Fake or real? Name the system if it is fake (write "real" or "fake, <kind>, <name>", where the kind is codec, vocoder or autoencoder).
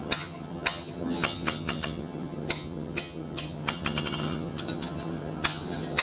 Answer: fake, vocoder, HiFi-GAN